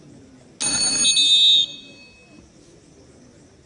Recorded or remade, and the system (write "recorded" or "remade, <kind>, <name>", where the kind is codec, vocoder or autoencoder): recorded